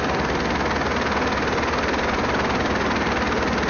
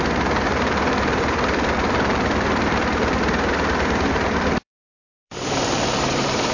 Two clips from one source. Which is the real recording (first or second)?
first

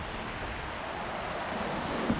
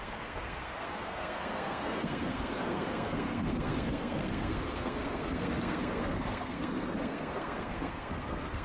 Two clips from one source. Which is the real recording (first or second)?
first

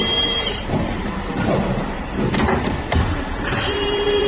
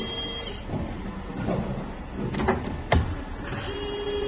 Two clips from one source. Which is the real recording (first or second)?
second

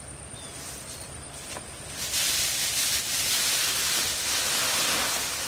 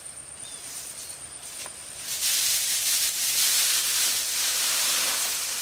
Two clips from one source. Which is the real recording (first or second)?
first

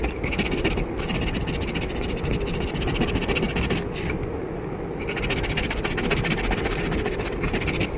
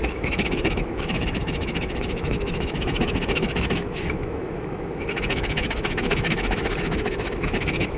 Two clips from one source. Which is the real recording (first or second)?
first